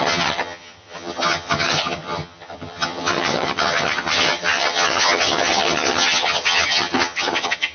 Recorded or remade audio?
remade